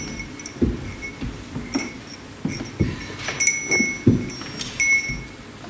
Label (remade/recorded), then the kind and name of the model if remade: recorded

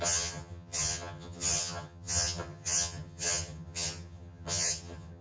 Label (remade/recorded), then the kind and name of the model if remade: remade, vocoder, HiFi-GAN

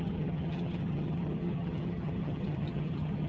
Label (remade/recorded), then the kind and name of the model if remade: remade, vocoder, HiFi-GAN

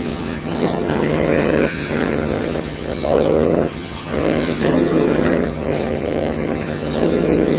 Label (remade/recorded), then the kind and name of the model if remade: remade, vocoder, HiFi-GAN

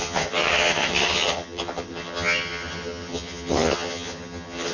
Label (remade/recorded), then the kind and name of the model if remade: remade, vocoder, HiFi-GAN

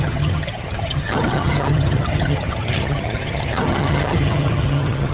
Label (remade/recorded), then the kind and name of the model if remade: remade, vocoder, HiFi-GAN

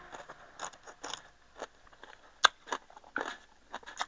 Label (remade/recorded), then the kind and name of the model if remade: recorded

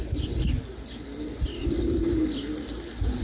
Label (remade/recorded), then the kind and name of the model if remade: recorded